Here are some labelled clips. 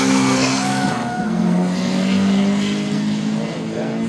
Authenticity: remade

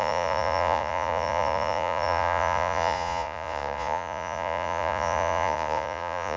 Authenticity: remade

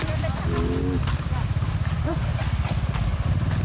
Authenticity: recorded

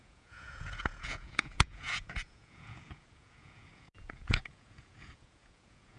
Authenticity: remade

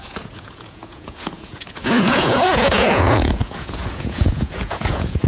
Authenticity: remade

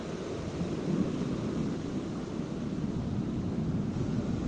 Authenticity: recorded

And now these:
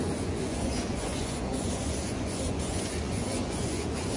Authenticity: remade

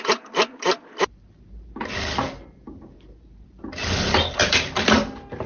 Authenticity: recorded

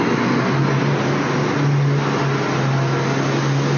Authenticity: recorded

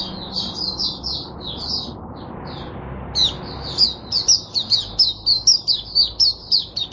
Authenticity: recorded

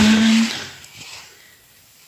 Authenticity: recorded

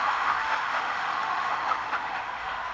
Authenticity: remade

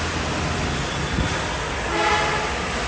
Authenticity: recorded